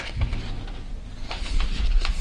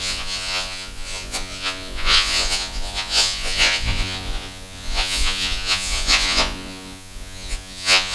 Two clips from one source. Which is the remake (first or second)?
second